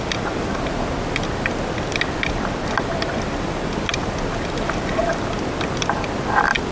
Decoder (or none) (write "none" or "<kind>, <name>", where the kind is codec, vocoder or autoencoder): none